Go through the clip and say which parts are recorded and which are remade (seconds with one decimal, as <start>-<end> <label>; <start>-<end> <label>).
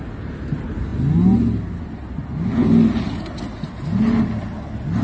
0.0-5.0 recorded